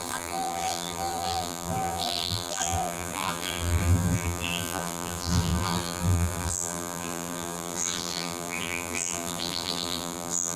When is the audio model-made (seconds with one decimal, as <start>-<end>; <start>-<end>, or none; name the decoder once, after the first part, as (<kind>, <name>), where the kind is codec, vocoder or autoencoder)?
0.0-10.6 (vocoder, BigVGAN v2)